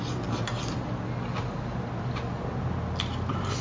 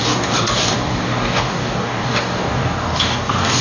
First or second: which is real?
first